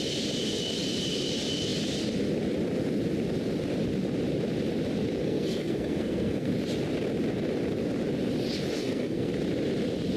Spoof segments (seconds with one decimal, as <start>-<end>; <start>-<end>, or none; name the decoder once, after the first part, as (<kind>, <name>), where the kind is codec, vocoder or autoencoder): 5.2-6.5 (codec, SNAC); 8.8-9.4